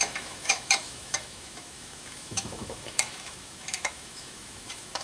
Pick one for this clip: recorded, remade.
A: remade